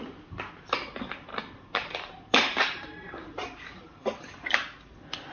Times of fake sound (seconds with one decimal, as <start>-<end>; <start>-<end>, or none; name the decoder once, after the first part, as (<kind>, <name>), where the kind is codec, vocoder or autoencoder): 1.3-4.5 (vocoder, BigVGAN v2)